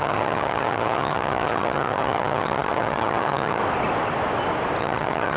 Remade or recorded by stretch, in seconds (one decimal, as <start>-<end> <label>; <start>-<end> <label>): 0.0-3.6 remade; 3.6-4.8 recorded; 4.8-5.4 remade